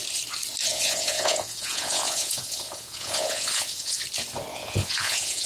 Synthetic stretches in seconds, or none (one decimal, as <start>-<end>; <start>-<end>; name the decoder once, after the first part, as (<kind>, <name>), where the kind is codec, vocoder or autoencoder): 0.7-4.0 (vocoder, Vocos); 4.5-5.5